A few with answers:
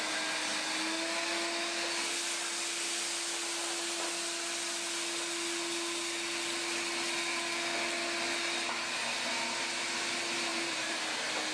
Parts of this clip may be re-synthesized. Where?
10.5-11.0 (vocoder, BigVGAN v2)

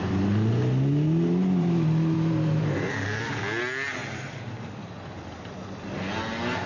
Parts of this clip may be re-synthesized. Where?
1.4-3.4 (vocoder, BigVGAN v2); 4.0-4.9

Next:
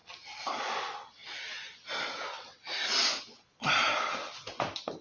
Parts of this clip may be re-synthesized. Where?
none